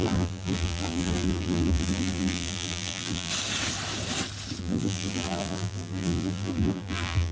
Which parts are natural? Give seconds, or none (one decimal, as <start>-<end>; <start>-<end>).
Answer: 3.3-4.6